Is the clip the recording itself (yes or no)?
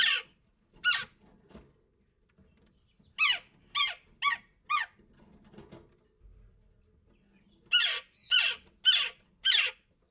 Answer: yes